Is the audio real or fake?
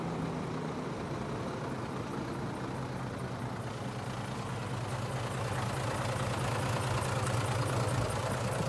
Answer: real